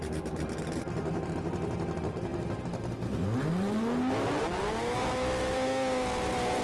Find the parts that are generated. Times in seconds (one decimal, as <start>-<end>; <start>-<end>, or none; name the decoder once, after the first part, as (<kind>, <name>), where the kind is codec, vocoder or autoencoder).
none